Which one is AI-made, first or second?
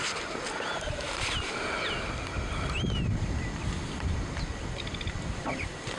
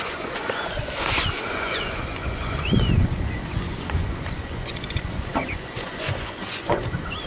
second